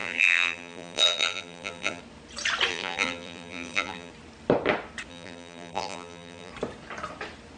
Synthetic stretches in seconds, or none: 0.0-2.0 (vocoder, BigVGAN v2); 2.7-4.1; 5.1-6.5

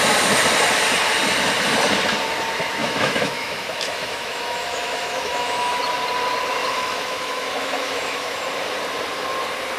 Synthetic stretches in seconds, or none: 2.8-5.8 (autoencoder, DAC-VAE); 6.6-8.4

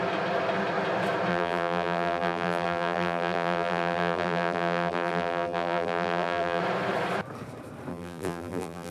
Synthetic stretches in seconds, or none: 1.3-6.6 (vocoder, BigVGAN v2); 7.9-8.9